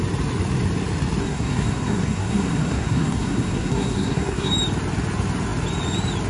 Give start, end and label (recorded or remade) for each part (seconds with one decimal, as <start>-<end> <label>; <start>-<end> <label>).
0.0-1.2 recorded; 1.2-4.5 remade; 4.5-6.3 recorded